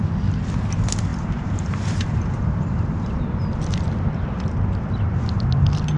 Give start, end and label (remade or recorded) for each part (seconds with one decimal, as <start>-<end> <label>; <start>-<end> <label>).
0.0-1.1 recorded; 1.1-3.5 remade; 3.5-6.0 recorded